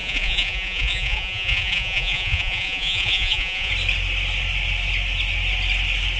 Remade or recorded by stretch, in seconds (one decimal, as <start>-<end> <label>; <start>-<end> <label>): 0.0-3.7 remade; 3.7-6.2 recorded